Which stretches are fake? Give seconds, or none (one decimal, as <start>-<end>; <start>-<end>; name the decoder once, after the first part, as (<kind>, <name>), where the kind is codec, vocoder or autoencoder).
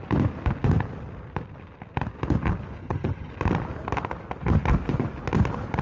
2.8-3.3 (vocoder, HiFi-GAN)